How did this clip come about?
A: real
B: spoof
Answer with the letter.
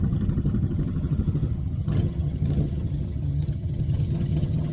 B